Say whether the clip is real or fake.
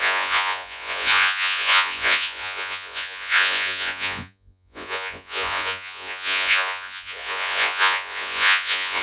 fake